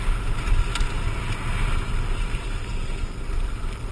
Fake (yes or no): no